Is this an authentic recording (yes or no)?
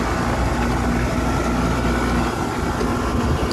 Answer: yes